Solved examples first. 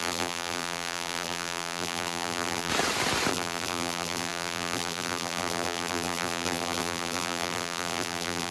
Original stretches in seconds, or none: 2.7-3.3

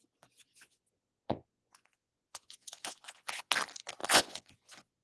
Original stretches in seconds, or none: 0.0-0.5; 3.5-4.0

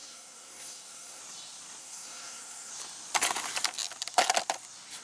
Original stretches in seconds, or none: 1.2-1.8; 2.7-5.0

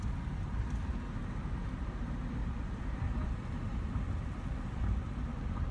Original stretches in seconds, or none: 0.0-2.4; 5.3-5.7

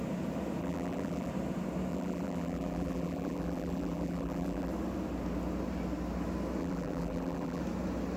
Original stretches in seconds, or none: 0.0-0.6; 1.3-1.9; 4.7-6.6; 7.6-8.2